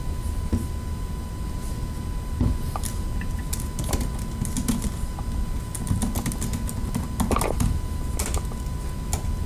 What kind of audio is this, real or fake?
real